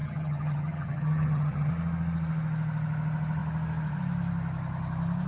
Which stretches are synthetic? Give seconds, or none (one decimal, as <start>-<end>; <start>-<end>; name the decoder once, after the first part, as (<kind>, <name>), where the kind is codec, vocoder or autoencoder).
0.0-1.7 (vocoder, HiFi-GAN)